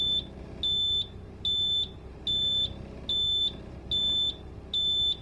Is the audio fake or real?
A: real